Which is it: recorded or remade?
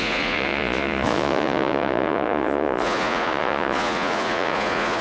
remade